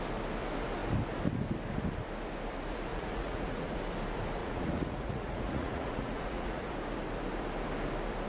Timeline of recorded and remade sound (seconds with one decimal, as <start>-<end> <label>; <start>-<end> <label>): 0.0-2.9 recorded; 2.9-3.8 remade; 3.8-4.4 recorded; 4.4-6.7 remade; 6.7-8.3 recorded

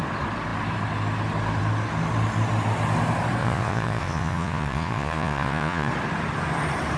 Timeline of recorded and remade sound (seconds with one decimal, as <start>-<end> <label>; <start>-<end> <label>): 0.0-3.4 recorded; 3.4-5.9 remade; 5.9-7.0 recorded

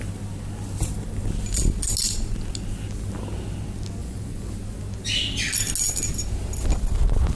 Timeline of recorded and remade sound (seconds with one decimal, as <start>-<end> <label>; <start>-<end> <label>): 0.0-4.0 recorded; 4.0-4.5 remade; 4.5-7.4 recorded

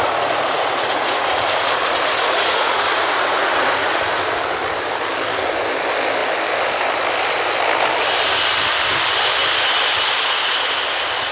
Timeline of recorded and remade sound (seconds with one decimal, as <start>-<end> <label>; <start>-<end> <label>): 0.0-3.9 remade; 3.9-11.3 recorded

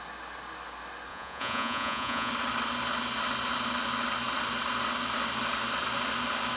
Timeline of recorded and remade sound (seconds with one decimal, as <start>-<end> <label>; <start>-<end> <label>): 0.0-1.1 recorded; 1.1-2.3 remade; 2.3-6.6 recorded